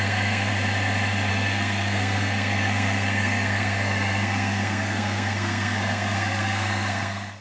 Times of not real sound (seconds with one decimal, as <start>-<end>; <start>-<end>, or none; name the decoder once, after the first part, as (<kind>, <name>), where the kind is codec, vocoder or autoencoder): 0.0-0.5 (codec, SNAC); 1.3-7.4